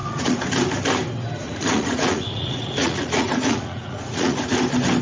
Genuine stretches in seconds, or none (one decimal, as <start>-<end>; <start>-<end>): 0.5-1.4; 4.4-5.0